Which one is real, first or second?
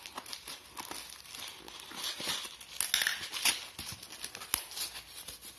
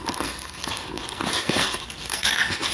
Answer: first